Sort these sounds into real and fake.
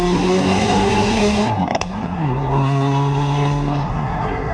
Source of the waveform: fake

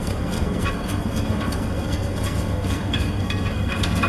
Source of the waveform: fake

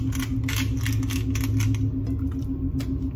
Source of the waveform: real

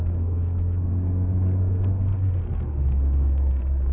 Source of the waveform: fake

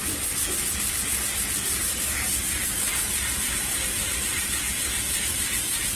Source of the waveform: real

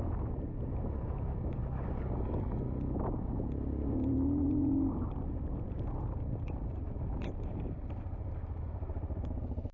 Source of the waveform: real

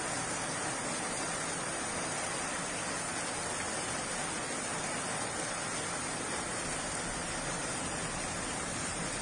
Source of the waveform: real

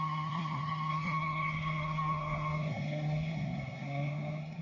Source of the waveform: fake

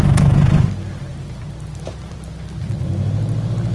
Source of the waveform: real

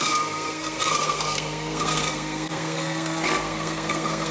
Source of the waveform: fake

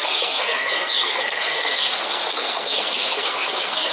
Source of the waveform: fake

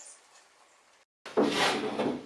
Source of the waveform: real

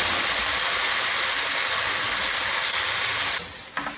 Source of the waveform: real